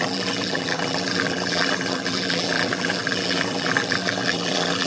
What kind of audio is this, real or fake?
fake